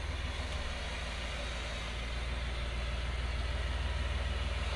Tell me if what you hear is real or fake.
real